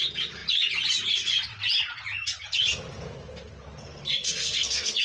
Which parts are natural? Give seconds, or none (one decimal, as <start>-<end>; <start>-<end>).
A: 0.0-4.2